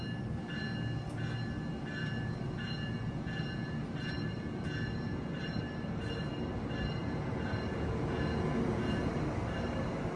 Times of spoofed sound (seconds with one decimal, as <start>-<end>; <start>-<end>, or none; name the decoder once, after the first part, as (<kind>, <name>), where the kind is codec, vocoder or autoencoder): 2.0-5.6 (vocoder, Vocos); 7.0-9.1